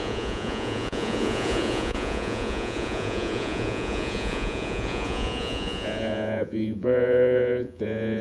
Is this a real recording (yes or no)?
no